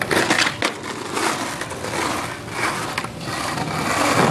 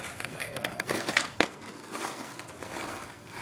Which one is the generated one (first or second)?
second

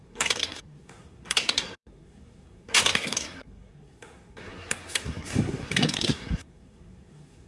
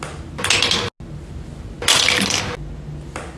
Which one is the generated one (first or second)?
first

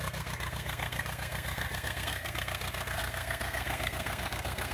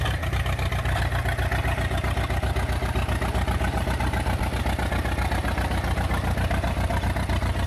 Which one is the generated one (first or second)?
first